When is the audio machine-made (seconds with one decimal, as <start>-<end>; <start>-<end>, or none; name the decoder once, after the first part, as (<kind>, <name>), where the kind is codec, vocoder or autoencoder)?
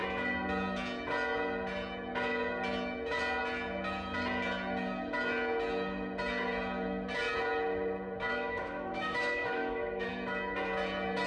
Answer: 8.3-10.1 (autoencoder, DAC-VAE)